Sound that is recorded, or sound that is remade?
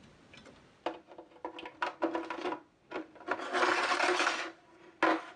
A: recorded